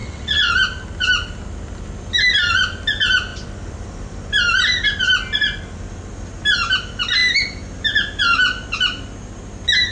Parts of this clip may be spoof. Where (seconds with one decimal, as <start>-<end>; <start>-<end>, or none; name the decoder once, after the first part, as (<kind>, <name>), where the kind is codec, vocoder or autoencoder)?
0.0-0.5 (vocoder, WaveNeXt)